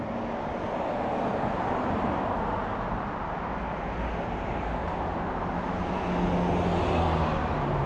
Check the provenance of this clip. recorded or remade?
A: recorded